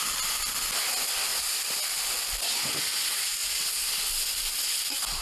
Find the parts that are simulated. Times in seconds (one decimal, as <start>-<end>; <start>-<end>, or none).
none